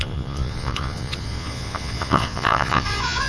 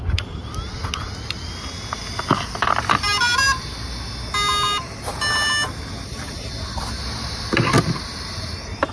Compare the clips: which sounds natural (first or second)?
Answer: second